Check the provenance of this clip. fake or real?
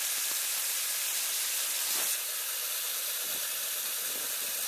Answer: fake